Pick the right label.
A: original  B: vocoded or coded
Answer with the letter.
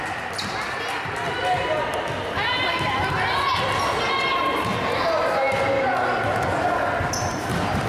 A